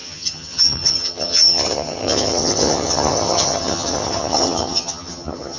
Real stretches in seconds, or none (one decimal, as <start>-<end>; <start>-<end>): none